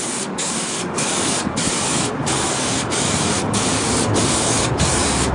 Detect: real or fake fake